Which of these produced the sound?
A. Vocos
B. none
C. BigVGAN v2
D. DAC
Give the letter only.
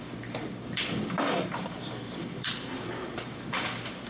C